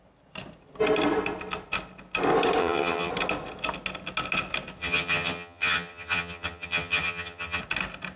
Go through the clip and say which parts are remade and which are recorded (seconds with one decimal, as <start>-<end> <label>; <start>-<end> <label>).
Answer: 0.0-2.6 recorded; 2.6-3.1 remade; 3.1-4.8 recorded; 4.8-7.6 remade; 7.6-8.2 recorded